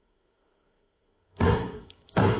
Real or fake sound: fake